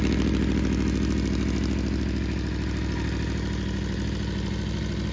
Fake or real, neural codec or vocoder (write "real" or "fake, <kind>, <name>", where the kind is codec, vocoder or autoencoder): real